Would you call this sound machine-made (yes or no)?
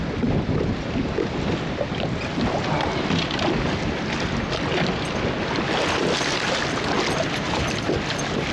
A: no